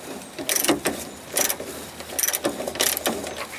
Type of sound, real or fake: real